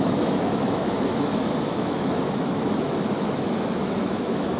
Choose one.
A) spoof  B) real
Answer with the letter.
A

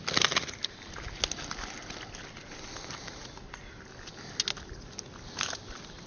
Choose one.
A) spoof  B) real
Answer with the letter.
B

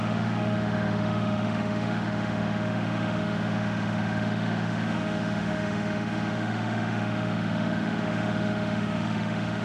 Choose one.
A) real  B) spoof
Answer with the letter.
B